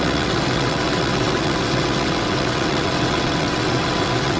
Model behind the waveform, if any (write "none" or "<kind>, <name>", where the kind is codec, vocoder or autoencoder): vocoder, WaveNeXt